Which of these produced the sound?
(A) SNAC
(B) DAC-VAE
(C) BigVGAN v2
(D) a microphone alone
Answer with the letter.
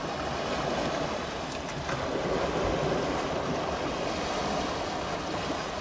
D